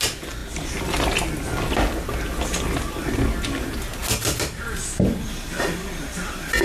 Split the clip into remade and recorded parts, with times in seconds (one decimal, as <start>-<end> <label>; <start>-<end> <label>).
0.0-6.6 recorded